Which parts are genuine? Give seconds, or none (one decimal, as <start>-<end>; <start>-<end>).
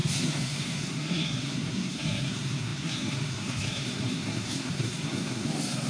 none